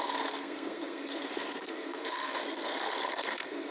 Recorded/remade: remade